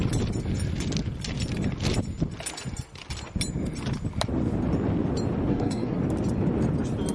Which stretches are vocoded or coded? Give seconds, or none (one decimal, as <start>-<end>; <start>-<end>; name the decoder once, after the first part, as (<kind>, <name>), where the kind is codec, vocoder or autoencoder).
5.5-6.0 (codec, SNAC)